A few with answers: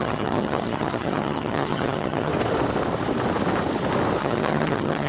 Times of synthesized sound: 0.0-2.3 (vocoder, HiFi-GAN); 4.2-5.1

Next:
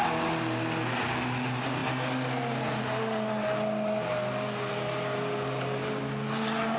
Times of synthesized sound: none